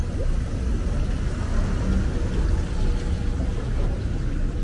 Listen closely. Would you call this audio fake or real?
real